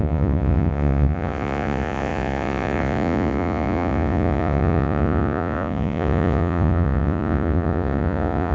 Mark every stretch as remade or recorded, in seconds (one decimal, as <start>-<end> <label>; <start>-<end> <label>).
0.0-8.5 remade